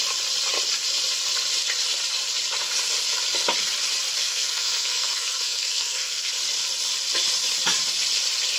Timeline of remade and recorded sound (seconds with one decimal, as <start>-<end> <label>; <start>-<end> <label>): 0.0-4.2 recorded; 4.2-6.3 remade; 6.3-8.6 recorded

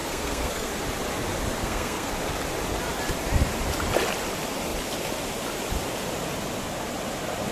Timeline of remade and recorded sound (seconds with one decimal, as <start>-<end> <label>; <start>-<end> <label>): 0.0-0.7 remade; 0.7-1.6 recorded; 1.6-2.1 remade; 2.1-7.5 recorded

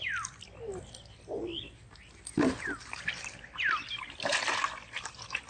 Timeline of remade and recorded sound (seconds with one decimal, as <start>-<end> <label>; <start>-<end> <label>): 0.0-5.5 recorded

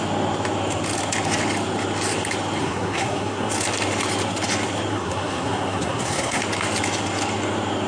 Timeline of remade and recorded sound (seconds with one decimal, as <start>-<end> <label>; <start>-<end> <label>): 0.0-2.6 recorded; 2.6-3.5 remade; 3.5-4.9 recorded; 4.9-6.4 remade; 6.4-7.9 recorded

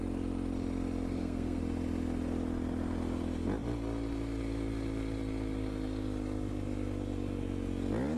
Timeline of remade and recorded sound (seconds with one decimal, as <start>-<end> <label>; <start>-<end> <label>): 0.0-1.1 recorded; 1.1-1.6 remade; 1.6-8.2 recorded

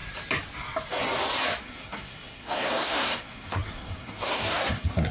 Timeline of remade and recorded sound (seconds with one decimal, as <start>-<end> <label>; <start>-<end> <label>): 0.0-1.6 recorded; 1.6-5.1 remade

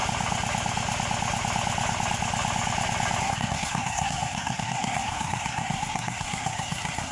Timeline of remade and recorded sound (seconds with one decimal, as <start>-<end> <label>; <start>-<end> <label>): 0.0-3.2 recorded; 3.2-7.1 remade